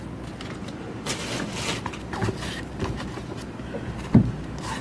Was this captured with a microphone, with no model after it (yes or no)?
yes